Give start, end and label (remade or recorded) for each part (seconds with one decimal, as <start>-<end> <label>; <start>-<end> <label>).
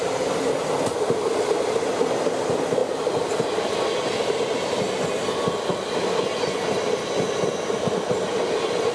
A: 0.0-8.9 recorded